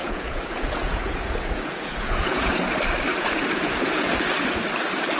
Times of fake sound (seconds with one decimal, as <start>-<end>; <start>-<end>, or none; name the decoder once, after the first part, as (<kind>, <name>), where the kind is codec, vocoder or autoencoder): 0.0-2.6 (vocoder, Vocos); 3.1-4.1